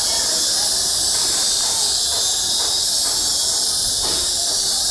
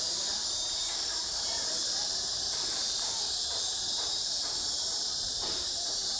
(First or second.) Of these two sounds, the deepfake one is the second